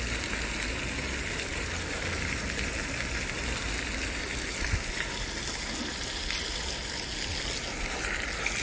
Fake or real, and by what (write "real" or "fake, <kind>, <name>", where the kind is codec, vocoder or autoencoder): real